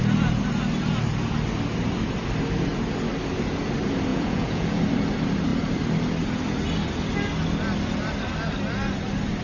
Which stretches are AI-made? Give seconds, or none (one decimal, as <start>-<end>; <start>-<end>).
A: 4.1-4.8